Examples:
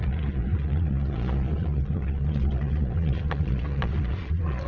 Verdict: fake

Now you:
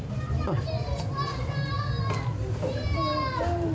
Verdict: real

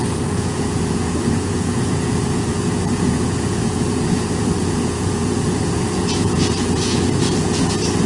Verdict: fake